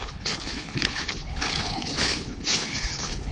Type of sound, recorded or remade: remade